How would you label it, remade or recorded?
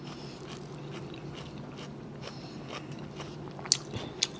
recorded